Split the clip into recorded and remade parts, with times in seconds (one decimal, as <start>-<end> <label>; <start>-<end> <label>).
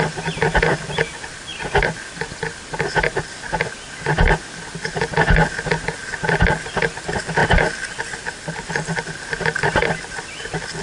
0.0-10.8 recorded